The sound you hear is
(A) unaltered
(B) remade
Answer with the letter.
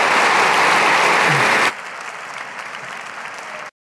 A